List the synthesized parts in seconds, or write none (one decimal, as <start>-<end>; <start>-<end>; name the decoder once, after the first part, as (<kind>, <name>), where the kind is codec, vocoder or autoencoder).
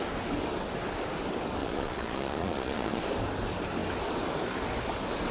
1.6-3.0 (vocoder, Vocos)